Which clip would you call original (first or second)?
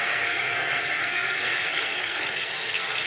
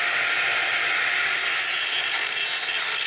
second